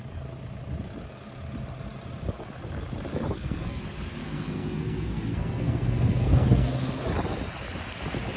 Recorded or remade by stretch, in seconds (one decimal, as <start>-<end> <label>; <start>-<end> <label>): 0.0-3.1 recorded; 3.1-3.8 remade; 3.8-4.2 recorded; 4.2-6.7 remade; 6.7-8.4 recorded